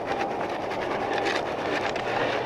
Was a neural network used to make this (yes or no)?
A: no